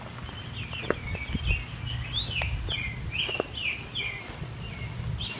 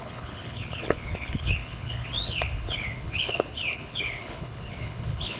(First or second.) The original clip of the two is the first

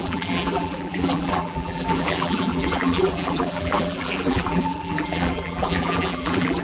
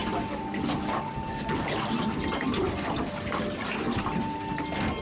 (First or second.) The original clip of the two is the second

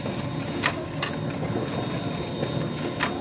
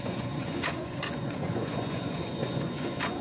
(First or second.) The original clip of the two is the first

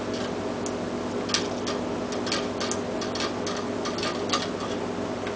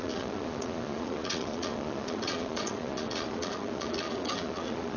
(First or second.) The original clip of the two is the first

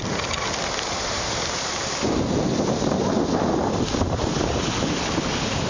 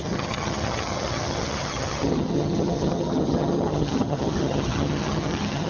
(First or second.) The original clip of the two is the first